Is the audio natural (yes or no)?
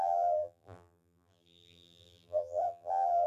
no